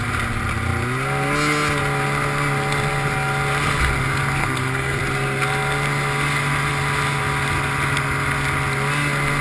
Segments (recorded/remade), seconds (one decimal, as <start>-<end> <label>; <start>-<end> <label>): 0.0-4.4 recorded; 4.4-5.0 remade; 5.0-9.4 recorded